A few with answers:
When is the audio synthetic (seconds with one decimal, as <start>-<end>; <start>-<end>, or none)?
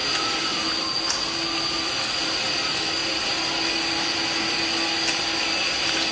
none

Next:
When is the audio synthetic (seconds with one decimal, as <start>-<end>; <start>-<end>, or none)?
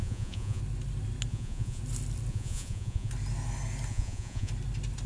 0.0-0.6; 1.3-1.8; 2.3-3.1; 3.9-4.5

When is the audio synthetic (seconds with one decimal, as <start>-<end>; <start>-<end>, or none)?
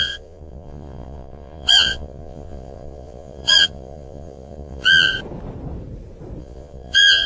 0.0-5.1; 6.4-7.3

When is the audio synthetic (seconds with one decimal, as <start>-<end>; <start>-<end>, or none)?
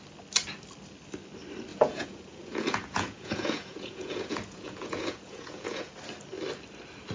1.7-5.9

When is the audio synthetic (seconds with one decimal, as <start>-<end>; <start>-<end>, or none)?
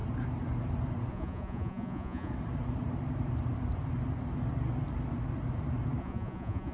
1.1-2.3; 6.0-6.7